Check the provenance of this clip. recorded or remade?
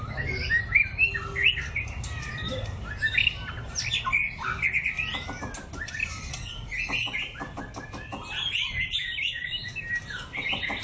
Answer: recorded